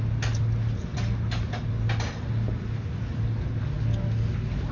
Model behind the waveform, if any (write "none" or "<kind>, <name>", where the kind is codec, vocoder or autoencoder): none